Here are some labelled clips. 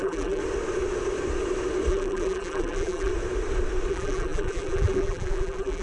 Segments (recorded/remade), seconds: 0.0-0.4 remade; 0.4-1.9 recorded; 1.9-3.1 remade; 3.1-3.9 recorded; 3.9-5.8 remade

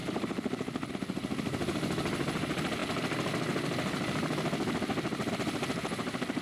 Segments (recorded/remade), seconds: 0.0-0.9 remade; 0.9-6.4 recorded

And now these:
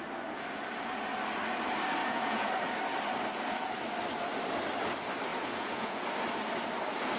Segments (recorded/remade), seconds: 0.0-2.0 recorded; 2.0-2.5 remade; 2.5-5.3 recorded; 5.3-6.1 remade; 6.1-7.2 recorded

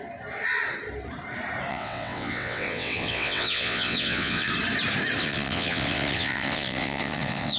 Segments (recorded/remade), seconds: 0.0-1.7 recorded; 1.7-4.5 remade; 4.5-5.2 recorded; 5.2-7.6 remade

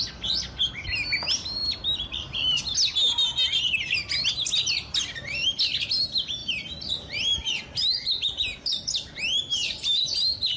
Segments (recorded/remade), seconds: 0.0-1.6 recorded; 1.6-2.6 remade; 2.6-6.4 recorded; 6.4-10.6 remade

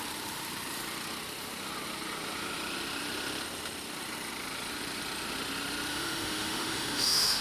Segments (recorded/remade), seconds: 0.0-5.9 recorded; 5.9-7.4 remade

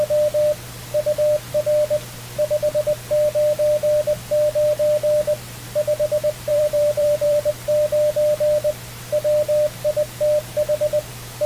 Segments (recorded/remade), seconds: 0.0-6.5 recorded; 6.5-7.5 remade; 7.5-11.5 recorded

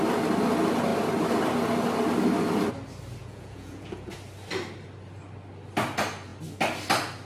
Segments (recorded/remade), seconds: 0.0-3.2 recorded; 3.2-4.1 remade; 4.1-7.3 recorded